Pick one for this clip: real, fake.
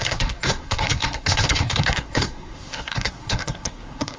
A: fake